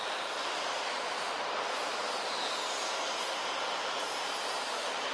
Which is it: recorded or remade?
remade